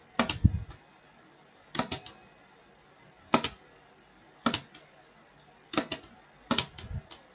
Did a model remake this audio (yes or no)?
no